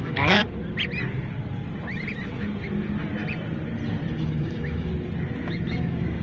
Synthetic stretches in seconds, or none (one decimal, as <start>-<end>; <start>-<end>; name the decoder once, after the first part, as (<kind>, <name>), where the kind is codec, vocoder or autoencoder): 0.0-0.4 (autoencoder, DAC-VAE); 4.1-4.9; 5.5-6.2